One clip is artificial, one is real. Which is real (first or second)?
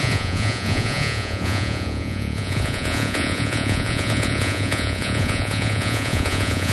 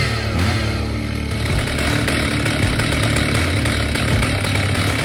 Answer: second